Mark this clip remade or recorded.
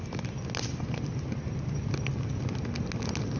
recorded